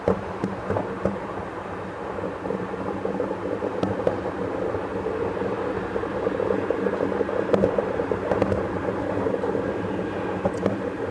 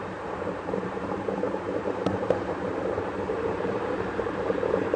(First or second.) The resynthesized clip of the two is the second